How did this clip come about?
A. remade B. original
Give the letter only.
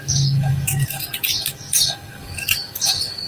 A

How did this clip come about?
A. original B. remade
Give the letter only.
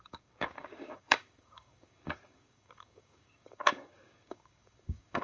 B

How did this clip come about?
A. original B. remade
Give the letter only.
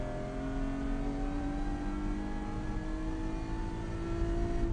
A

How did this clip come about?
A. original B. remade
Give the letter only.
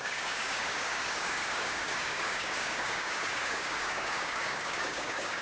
B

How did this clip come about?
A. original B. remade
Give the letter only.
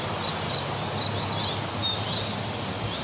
A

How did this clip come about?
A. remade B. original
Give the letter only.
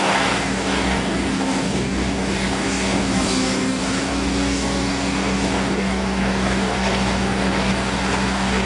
A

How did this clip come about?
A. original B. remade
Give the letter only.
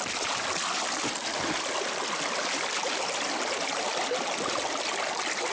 A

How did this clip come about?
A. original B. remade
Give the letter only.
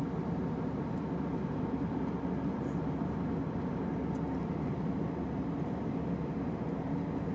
A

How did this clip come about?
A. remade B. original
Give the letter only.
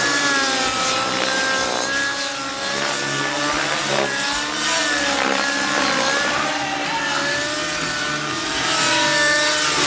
B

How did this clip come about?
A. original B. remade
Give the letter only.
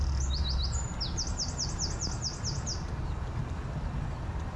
A